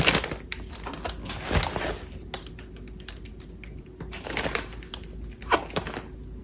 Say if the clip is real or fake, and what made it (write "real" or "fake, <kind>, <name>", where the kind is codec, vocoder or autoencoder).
real